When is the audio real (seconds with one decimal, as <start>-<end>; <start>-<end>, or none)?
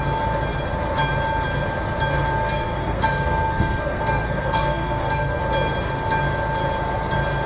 0.0-2.3; 5.4-7.5